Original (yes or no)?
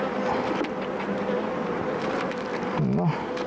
yes